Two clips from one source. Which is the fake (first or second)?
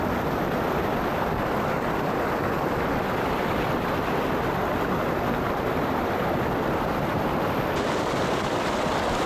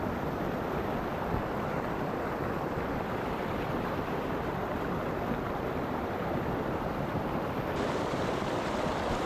second